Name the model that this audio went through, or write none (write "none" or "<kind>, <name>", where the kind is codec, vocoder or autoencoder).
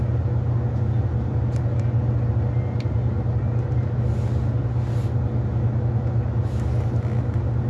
none